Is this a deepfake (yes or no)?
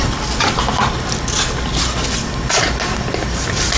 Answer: no